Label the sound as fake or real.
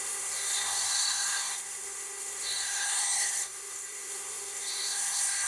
fake